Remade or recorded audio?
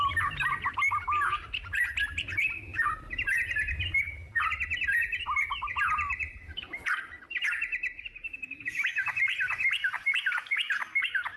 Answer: remade